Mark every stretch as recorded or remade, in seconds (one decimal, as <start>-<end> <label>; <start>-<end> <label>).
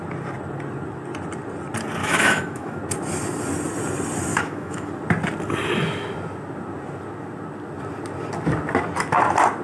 0.0-2.0 recorded; 2.0-2.8 remade; 2.8-4.3 recorded; 4.3-4.9 remade; 4.9-9.6 recorded